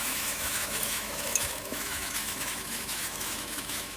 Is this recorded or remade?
remade